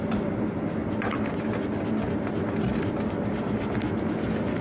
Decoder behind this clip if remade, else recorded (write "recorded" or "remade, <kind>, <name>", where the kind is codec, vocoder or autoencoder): recorded